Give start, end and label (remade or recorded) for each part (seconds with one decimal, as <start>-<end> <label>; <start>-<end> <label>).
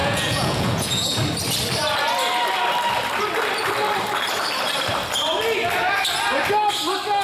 0.0-1.2 remade; 1.2-7.2 recorded